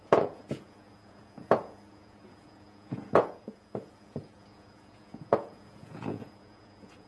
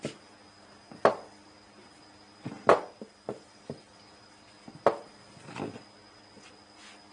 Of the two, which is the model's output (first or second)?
first